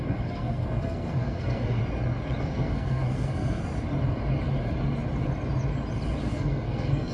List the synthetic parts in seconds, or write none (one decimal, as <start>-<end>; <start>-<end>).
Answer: 0.0-1.8; 2.4-3.6; 6.2-7.1